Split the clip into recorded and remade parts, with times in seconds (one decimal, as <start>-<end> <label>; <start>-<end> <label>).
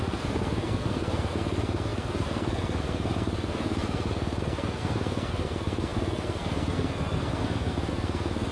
0.0-8.5 remade